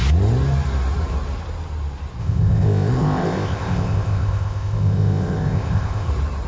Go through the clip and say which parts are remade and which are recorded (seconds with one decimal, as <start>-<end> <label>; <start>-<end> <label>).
0.0-2.2 recorded; 2.2-6.1 remade; 6.1-6.5 recorded